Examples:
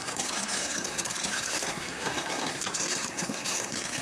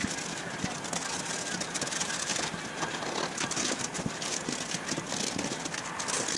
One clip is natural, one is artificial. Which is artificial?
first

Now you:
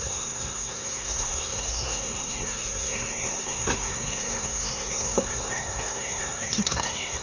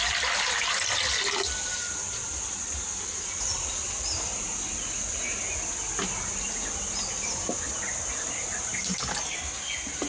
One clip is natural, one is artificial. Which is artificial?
first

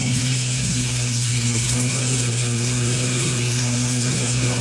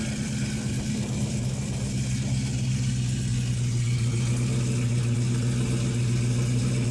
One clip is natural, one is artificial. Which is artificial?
first